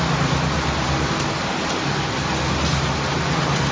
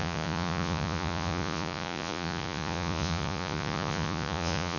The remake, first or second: second